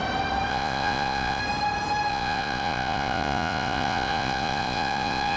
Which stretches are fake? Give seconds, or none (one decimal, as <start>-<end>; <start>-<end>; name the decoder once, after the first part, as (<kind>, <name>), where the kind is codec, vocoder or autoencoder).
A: 0.5-1.4 (vocoder, Vocos); 2.1-5.4